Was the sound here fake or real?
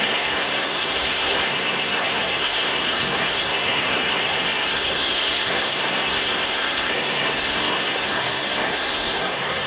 fake